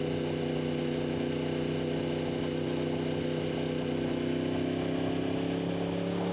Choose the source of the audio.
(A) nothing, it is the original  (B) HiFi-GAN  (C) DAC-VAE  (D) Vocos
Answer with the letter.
A